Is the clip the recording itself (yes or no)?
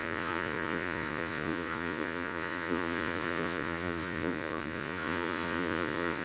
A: no